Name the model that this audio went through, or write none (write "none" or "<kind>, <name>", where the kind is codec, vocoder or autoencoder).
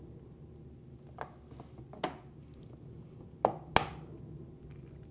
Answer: none